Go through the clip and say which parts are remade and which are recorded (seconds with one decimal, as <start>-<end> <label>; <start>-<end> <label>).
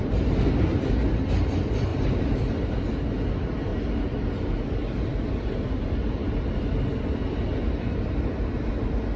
0.0-9.2 recorded